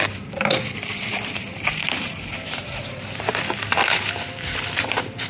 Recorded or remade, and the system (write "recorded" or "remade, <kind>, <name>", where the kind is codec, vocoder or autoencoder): remade, vocoder, BigVGAN v2